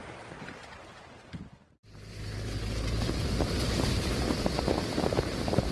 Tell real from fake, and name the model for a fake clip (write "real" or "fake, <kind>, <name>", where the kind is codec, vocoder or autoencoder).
real